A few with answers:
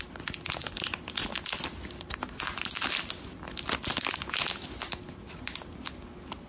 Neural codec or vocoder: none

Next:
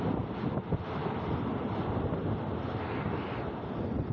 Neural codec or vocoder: none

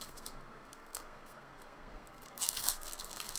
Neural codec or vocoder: codec, SNAC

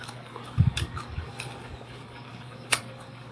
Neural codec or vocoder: codec, DAC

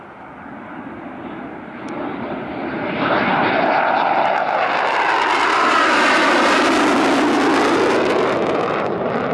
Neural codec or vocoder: none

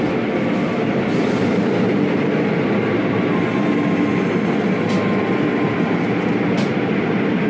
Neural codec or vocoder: none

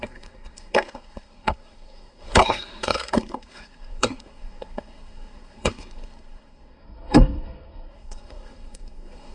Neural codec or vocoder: codec, SNAC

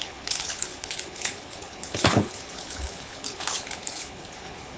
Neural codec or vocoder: codec, HILCodec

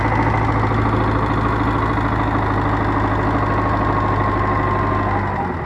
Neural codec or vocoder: none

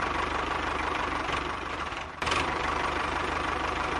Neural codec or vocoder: vocoder, BigVGAN v2